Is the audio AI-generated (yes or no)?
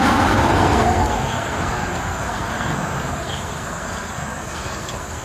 yes